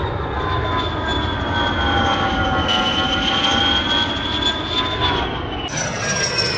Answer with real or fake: real